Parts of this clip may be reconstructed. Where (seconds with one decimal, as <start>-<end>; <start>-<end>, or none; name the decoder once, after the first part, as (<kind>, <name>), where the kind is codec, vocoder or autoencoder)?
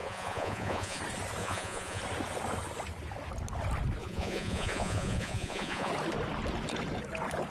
0.0-1.0 (vocoder, Vocos); 1.4-2.0; 4.0-5.9